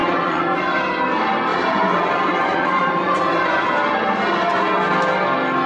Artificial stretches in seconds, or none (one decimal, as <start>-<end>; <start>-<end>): 0.0-0.7; 1.5-3.6